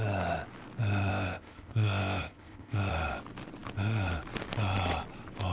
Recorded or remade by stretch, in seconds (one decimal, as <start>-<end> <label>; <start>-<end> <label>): 0.0-1.1 recorded; 1.1-2.9 remade; 2.9-5.5 recorded